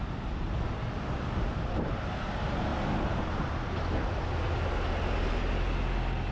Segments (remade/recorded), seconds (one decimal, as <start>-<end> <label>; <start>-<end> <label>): 0.0-6.3 recorded